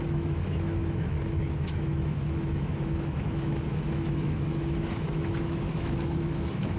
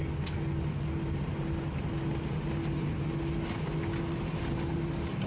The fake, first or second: first